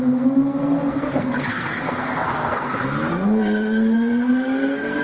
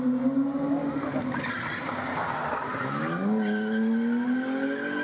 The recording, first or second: second